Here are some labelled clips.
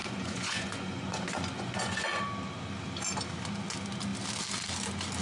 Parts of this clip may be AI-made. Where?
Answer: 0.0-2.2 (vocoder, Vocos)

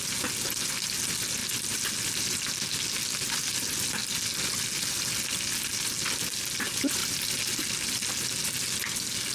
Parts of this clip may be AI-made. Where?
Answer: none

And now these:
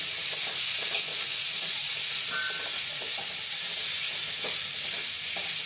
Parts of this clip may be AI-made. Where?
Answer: 1.1-2.3 (vocoder, Vocos); 2.7-3.3

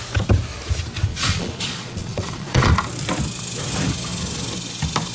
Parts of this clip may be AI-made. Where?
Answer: 1.1-2.7 (vocoder, Vocos)